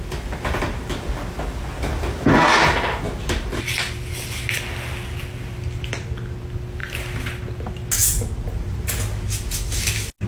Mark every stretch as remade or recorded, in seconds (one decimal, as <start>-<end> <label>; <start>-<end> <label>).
0.0-6.8 recorded; 6.8-7.4 remade; 7.4-8.0 recorded; 8.0-8.9 remade; 8.9-10.3 recorded